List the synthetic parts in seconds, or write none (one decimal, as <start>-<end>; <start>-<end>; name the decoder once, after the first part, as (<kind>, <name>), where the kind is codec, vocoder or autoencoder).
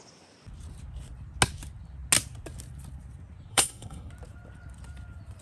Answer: 3.5-4.1 (codec, SNAC)